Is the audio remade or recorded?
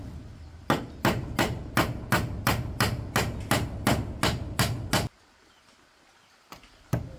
recorded